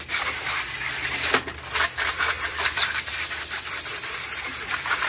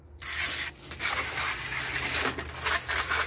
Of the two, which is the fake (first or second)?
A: first